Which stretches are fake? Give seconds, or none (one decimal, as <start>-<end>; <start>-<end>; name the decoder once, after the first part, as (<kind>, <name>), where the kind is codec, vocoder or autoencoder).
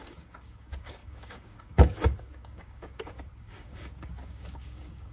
0.0-5.1 (codec, DAC)